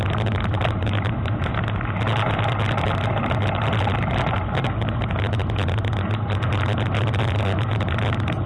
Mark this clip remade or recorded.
recorded